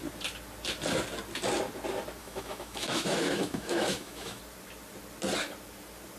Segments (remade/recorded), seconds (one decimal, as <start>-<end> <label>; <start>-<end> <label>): 0.0-2.2 recorded; 2.2-4.4 remade; 4.4-6.2 recorded

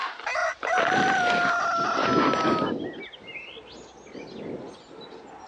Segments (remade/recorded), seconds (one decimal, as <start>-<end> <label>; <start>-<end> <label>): 0.0-5.5 recorded

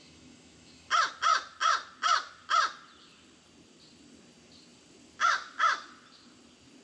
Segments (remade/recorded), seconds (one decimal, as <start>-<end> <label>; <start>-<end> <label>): 0.0-1.1 remade; 1.1-6.8 recorded

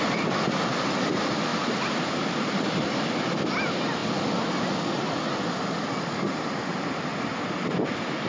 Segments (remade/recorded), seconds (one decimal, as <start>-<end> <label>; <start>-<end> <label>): 0.0-8.3 recorded

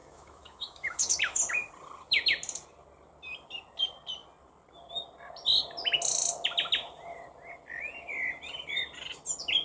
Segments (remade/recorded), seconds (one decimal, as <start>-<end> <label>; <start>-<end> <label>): 0.0-1.4 remade; 1.4-9.6 recorded

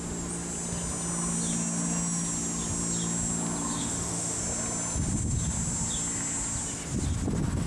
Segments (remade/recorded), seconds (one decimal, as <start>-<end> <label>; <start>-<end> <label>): 0.0-3.8 recorded; 3.8-4.4 remade; 4.4-7.7 recorded

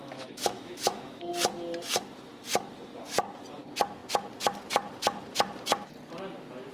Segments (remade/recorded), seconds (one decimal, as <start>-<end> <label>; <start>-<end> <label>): 0.0-1.3 remade; 1.3-6.7 recorded

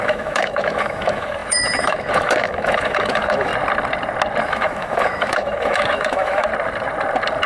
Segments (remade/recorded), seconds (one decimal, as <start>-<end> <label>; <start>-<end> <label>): 0.0-3.5 remade; 3.5-4.4 recorded; 4.4-6.5 remade; 6.5-7.5 recorded